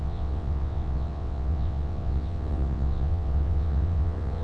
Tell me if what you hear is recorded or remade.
remade